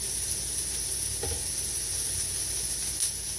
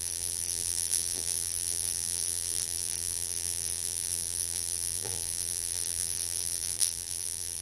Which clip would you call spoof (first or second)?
second